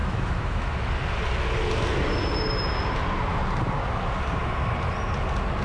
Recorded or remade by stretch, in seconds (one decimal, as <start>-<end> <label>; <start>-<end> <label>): 0.0-0.9 remade; 0.9-5.6 recorded

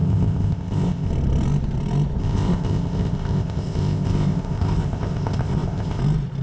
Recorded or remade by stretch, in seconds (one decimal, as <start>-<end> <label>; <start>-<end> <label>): 0.0-1.1 remade; 1.1-2.2 recorded; 2.2-6.0 remade; 6.0-6.4 recorded

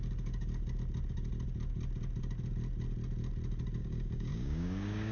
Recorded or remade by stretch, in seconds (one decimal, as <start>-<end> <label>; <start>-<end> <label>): 0.0-3.8 recorded; 3.8-5.1 remade

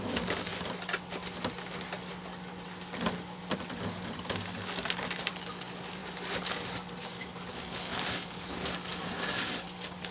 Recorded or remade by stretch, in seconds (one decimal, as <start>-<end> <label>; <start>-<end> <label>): 0.0-0.5 remade; 0.5-5.3 recorded; 5.3-6.0 remade; 6.0-7.0 recorded; 7.0-10.1 remade

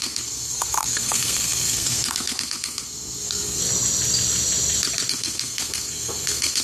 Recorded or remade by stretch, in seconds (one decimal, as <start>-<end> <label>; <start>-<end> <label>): 0.0-3.6 remade; 3.6-5.1 recorded; 5.1-6.6 remade

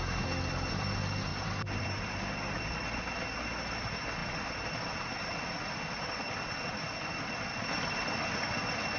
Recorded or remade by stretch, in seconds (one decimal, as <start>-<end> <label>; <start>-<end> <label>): 0.0-1.3 recorded; 1.3-2.6 remade; 2.6-9.0 recorded

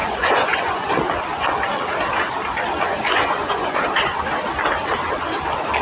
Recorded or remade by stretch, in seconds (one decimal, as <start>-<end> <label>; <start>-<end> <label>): 0.0-1.0 remade; 1.0-2.9 recorded; 2.9-3.8 remade; 3.8-5.8 recorded

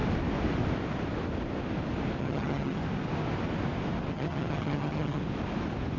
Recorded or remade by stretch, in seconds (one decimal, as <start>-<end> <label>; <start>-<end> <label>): 0.0-2.2 recorded; 2.2-2.8 remade; 2.8-4.1 recorded; 4.1-5.2 remade; 5.2-6.0 recorded